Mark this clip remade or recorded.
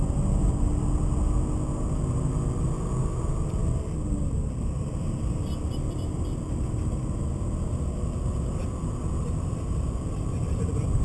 recorded